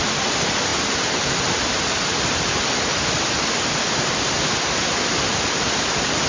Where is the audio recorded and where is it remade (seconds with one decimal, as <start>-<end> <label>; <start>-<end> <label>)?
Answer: 0.0-6.3 recorded